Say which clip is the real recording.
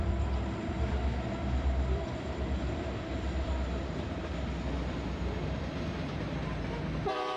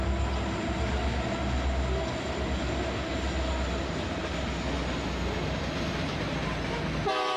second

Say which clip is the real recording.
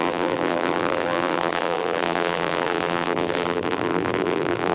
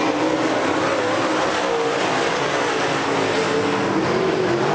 second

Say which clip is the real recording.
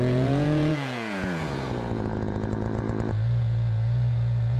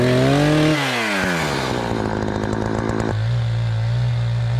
second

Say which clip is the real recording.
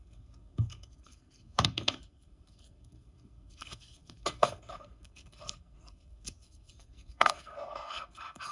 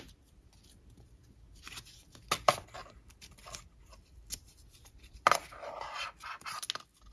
second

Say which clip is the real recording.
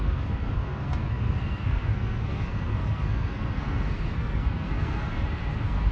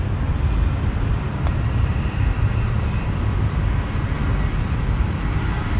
second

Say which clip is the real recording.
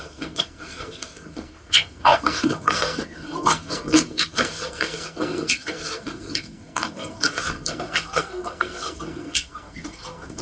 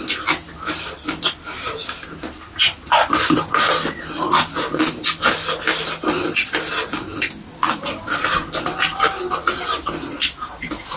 second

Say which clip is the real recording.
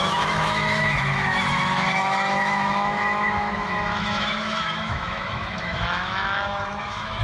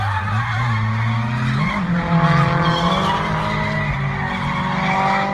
second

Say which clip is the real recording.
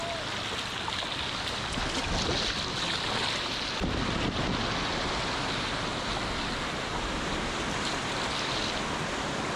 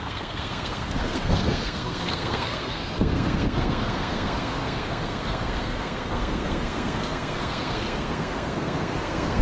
first